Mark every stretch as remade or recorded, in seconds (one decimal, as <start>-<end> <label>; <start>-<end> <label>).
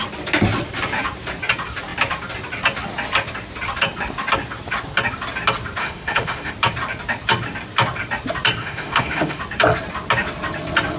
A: 0.0-5.8 recorded; 5.8-6.5 remade; 6.5-8.6 recorded; 8.6-9.4 remade; 9.4-11.0 recorded